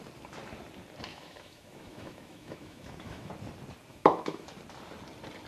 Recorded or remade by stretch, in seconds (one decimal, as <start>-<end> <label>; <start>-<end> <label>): 0.0-1.1 recorded; 1.1-3.3 remade; 3.3-3.9 recorded; 3.9-4.5 remade; 4.5-5.5 recorded

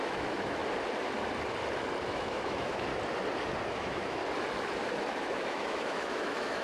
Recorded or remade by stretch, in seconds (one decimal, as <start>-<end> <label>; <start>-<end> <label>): 0.0-0.6 remade; 0.6-2.0 recorded; 2.0-2.9 remade; 2.9-3.7 recorded; 3.7-4.2 remade; 4.2-5.1 recorded; 5.1-6.6 remade

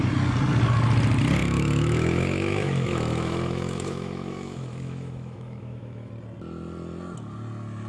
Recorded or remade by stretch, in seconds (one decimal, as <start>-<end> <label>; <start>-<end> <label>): 0.0-1.4 recorded; 1.4-6.1 remade; 6.1-7.9 recorded

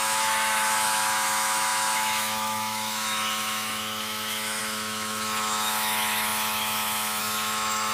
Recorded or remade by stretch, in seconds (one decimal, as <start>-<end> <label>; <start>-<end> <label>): 0.0-7.9 remade